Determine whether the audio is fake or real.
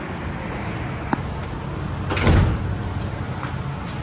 real